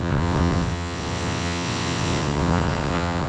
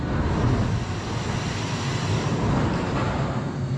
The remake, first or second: first